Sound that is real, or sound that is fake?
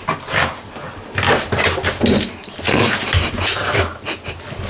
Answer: real